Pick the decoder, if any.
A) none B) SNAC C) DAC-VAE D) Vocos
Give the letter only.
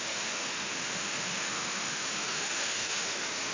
C